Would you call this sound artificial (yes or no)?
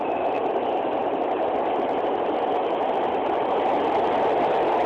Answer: no